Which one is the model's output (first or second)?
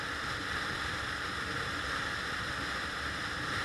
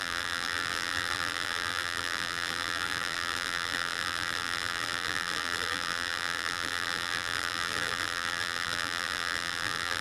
second